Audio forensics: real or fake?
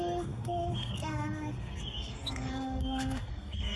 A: fake